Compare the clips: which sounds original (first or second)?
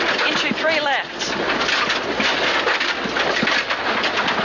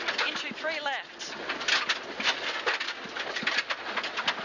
second